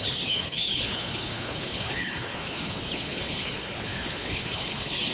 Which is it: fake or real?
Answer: fake